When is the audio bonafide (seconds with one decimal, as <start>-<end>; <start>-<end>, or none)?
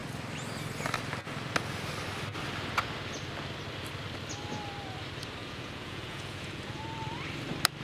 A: 0.0-5.4; 6.8-7.8